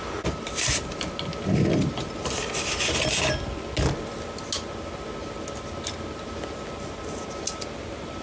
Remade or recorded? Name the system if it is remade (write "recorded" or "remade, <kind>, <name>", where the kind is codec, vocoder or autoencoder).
recorded